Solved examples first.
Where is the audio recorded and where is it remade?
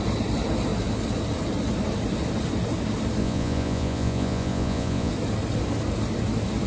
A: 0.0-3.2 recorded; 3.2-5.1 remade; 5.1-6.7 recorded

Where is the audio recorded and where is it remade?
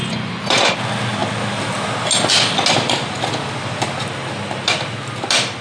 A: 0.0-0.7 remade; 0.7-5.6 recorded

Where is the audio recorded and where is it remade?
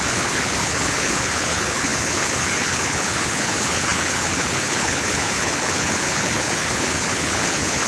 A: 0.0-7.9 remade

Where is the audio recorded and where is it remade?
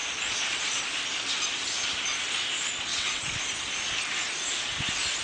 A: 0.0-2.9 recorded; 2.9-3.4 remade; 3.4-5.2 recorded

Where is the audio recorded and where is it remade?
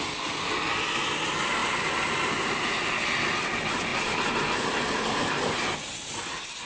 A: 0.0-6.7 recorded